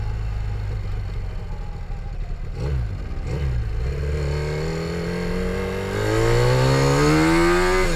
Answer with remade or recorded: recorded